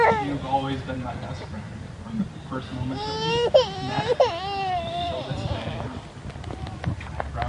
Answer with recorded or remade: recorded